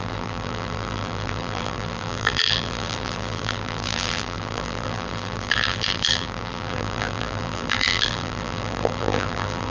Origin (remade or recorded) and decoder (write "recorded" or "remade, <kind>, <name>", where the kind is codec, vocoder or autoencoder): remade, vocoder, BigVGAN v2